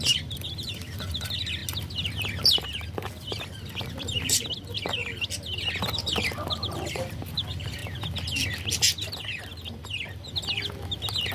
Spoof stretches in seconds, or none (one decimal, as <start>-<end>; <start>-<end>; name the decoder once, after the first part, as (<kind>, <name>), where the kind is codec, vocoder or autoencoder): 0.0-1.6 (vocoder, BigVGAN v2); 3.3-5.0; 5.8-7.8